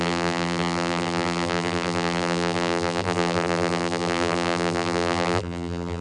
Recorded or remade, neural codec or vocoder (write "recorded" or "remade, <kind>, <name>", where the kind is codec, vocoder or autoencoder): remade, vocoder, BigVGAN v2